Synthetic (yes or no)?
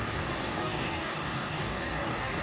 yes